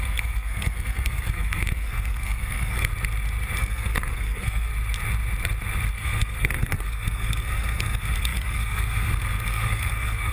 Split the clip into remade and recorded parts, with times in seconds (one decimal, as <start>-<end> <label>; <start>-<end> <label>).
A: 0.0-2.9 remade; 2.9-3.6 recorded; 3.6-4.7 remade; 4.7-5.9 recorded; 5.9-10.3 remade